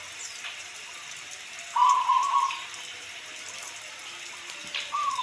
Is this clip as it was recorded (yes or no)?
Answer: yes